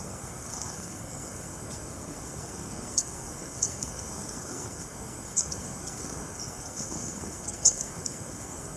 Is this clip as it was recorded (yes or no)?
no